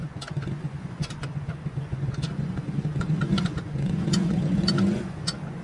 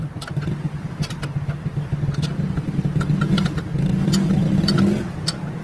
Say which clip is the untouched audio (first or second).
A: second